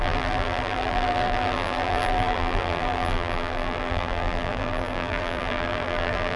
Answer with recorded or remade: remade